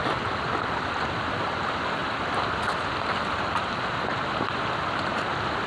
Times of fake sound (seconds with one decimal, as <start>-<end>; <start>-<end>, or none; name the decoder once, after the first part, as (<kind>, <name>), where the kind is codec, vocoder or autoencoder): none